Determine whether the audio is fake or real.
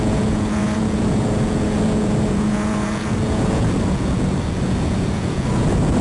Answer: fake